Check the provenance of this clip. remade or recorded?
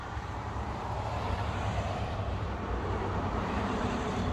remade